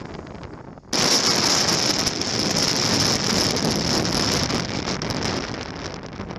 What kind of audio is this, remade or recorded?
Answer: recorded